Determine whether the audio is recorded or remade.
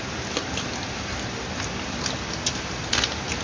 recorded